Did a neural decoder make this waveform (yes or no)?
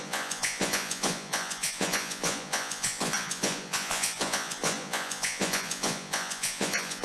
yes